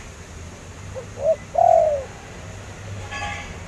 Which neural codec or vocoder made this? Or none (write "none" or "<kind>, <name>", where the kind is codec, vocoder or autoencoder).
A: none